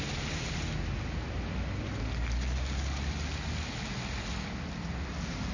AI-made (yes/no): no